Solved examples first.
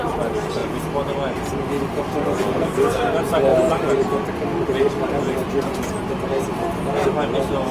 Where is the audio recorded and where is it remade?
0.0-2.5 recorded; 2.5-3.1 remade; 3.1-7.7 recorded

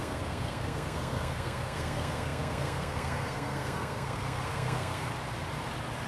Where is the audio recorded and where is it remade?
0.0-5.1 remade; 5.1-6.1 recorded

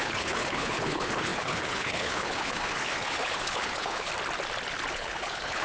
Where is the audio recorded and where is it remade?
0.0-4.1 remade; 4.1-4.9 recorded; 4.9-5.6 remade

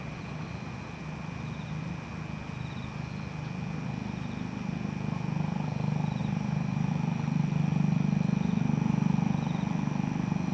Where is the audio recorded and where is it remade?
0.0-6.2 recorded; 6.2-6.9 remade; 6.9-10.5 recorded